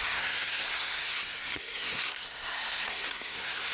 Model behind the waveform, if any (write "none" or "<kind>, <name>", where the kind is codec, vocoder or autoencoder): codec, SNAC